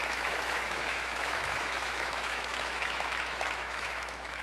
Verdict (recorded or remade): remade